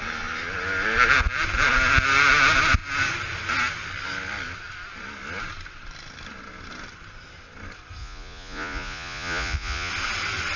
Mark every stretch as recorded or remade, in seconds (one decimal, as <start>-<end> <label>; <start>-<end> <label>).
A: 0.0-8.0 recorded; 8.0-9.9 remade; 9.9-10.6 recorded